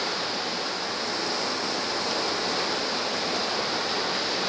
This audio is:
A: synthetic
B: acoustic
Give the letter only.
B